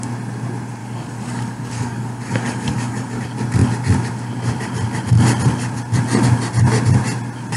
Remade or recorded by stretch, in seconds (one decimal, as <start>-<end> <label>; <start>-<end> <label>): 0.0-0.8 recorded; 0.8-3.2 remade; 3.2-7.6 recorded